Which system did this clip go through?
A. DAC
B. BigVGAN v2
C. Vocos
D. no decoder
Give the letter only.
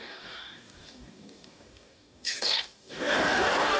A